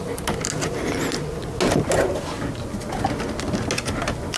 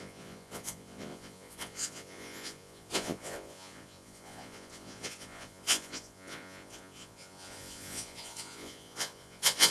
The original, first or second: first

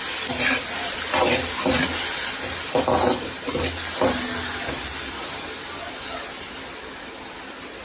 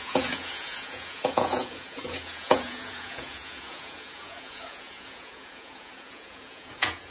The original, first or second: first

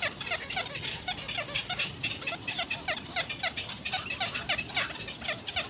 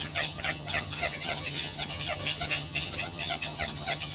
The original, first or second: first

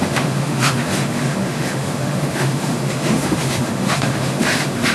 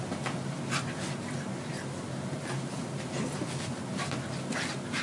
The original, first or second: second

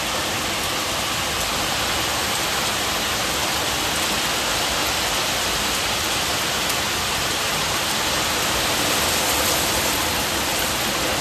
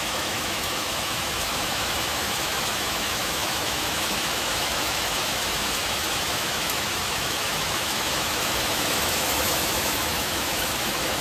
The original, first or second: first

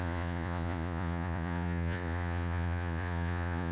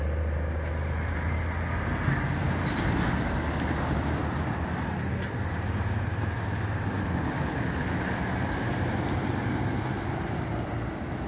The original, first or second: second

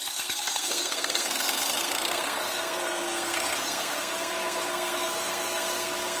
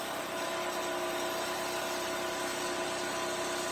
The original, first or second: second